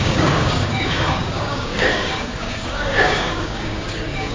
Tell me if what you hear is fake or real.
fake